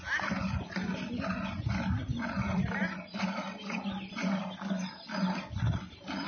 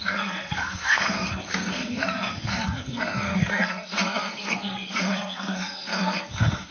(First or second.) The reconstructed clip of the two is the second